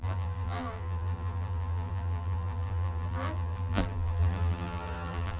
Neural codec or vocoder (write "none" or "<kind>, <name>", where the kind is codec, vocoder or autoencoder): vocoder, BigVGAN v2